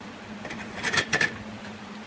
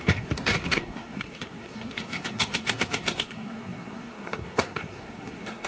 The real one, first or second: first